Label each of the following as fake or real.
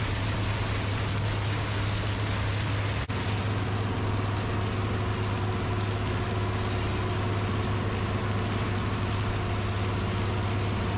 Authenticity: real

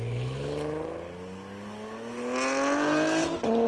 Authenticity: real